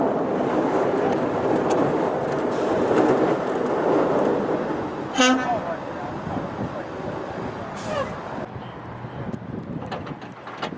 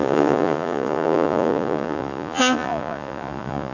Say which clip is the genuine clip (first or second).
first